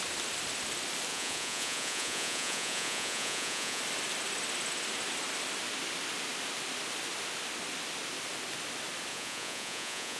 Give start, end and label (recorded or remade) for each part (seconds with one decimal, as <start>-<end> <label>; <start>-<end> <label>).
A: 0.0-1.1 recorded; 1.1-3.8 remade; 3.8-9.1 recorded; 9.1-10.2 remade